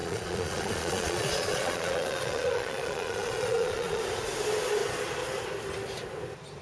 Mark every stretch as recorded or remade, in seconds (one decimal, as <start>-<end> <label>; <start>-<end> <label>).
0.0-4.0 remade; 4.0-6.6 recorded